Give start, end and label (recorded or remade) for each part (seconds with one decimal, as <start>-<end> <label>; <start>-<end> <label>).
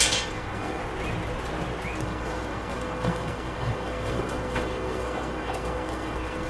0.0-0.8 remade; 0.8-2.0 recorded; 2.0-6.5 remade